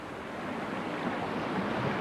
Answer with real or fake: real